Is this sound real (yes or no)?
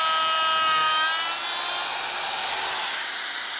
yes